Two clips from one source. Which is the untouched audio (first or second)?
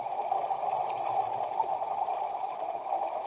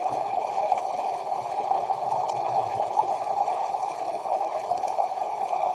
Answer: first